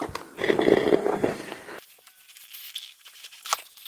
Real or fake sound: real